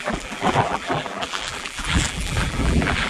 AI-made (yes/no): yes